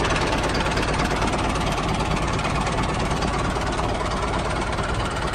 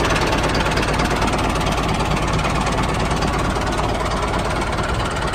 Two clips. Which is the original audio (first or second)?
second